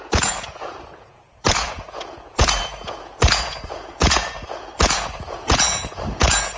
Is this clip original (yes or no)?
no